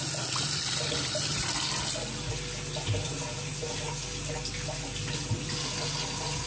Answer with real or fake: real